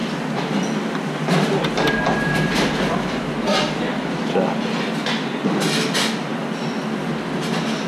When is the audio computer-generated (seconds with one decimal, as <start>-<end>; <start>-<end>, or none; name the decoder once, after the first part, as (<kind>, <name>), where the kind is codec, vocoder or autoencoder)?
none

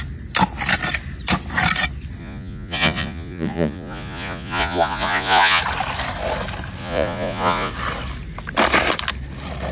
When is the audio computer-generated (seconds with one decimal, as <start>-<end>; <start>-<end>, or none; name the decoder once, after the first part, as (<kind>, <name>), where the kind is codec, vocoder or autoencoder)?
2.2-5.6 (vocoder, Vocos); 6.8-7.7